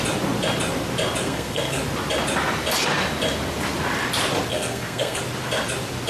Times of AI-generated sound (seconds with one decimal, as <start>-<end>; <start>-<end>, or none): 1.2-1.8; 4.5-5.2